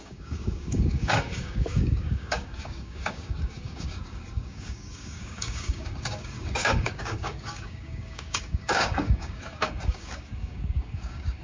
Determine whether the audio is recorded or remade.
remade